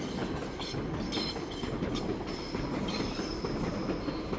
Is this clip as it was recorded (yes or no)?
yes